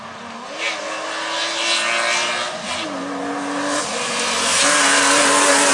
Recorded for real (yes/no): yes